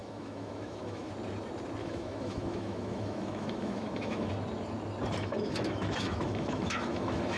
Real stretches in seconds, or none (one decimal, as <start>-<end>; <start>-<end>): 1.1-1.8; 4.3-5.2